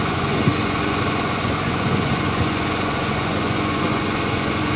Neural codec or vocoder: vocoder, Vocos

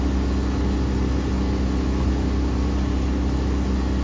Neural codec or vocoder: none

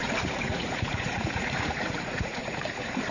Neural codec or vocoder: vocoder, Vocos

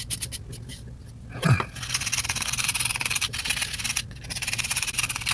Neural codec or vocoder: none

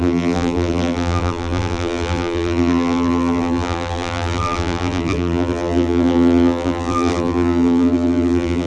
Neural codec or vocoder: vocoder, BigVGAN v2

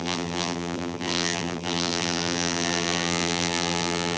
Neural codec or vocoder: vocoder, BigVGAN v2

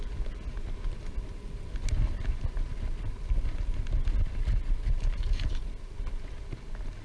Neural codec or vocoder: none